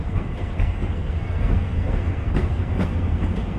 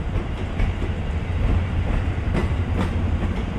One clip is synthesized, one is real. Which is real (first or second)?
second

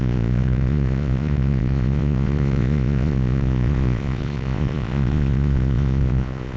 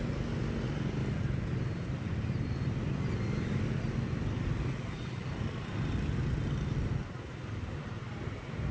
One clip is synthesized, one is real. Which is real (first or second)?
second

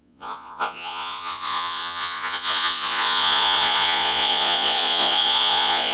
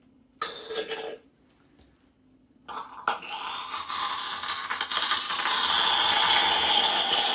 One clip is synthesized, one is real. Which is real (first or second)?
second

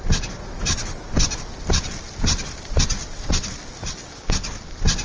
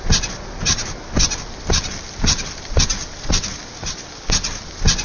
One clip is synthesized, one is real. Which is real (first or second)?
second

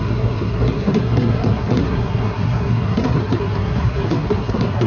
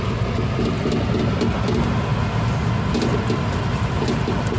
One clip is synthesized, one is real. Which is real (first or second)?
second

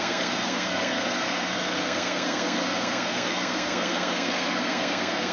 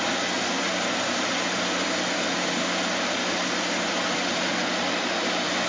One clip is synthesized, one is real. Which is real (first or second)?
second